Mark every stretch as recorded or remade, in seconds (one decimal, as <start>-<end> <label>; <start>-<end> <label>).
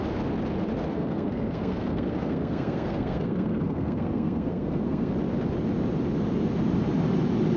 0.0-0.9 recorded; 0.9-5.1 remade; 5.1-7.6 recorded